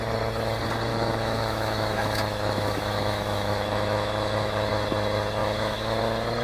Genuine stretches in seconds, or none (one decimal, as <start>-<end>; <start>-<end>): 0.0-0.9; 4.7-5.4; 6.0-6.4